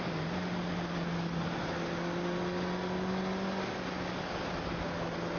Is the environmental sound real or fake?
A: real